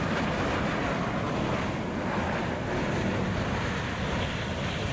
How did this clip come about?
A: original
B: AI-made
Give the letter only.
A